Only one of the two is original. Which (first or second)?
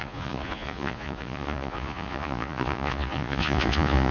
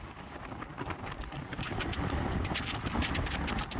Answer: second